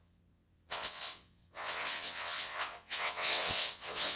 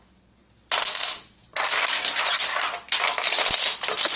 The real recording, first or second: second